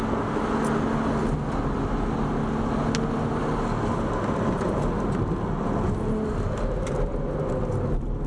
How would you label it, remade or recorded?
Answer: recorded